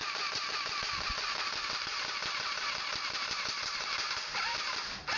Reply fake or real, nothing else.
real